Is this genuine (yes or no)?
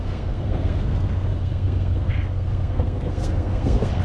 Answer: no